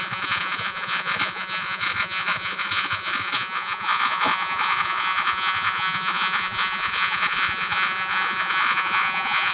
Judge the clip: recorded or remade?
remade